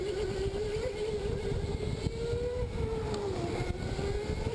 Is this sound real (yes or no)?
yes